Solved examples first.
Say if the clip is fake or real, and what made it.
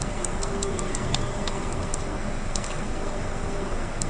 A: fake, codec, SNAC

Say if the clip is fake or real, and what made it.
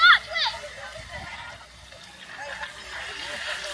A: real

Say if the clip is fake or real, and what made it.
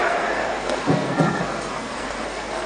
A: fake, codec, SNAC